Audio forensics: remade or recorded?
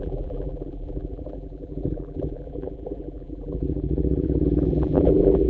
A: remade